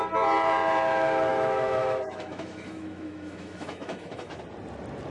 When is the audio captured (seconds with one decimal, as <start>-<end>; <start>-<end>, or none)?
0.0-1.3; 4.4-5.1